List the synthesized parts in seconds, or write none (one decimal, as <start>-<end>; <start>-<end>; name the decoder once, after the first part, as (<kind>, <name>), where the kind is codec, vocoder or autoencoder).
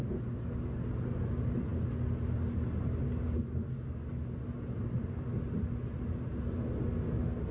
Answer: none